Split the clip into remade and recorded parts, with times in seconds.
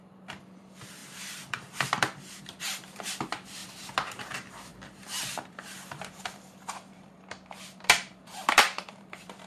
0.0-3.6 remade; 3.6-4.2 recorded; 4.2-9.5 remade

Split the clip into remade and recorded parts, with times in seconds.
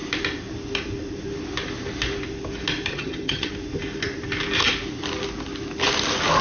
0.0-2.9 recorded; 2.9-3.5 remade; 3.5-6.4 recorded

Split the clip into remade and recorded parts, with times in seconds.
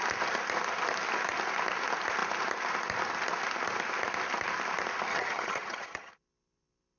0.0-5.1 recorded; 5.1-6.1 remade; 6.1-7.0 recorded